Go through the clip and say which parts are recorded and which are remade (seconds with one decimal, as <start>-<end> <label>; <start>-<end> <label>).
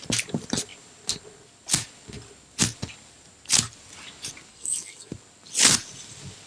0.0-4.5 recorded; 4.5-5.1 remade; 5.1-6.5 recorded